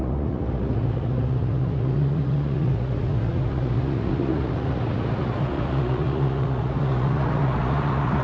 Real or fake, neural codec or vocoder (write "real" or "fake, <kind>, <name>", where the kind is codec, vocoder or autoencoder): fake, vocoder, Vocos